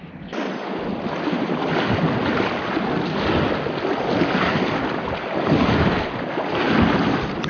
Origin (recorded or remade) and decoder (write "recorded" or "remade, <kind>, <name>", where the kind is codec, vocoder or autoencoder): recorded